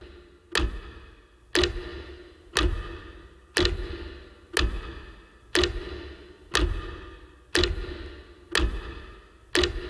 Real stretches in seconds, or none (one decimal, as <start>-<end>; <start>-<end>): 0.0-9.9